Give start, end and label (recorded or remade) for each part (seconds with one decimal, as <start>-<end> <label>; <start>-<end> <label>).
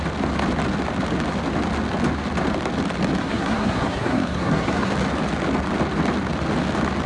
0.0-3.2 recorded; 3.2-4.9 remade; 4.9-7.1 recorded